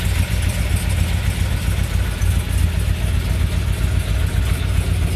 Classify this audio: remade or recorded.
recorded